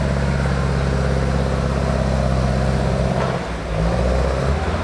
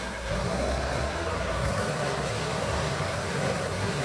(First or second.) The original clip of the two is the first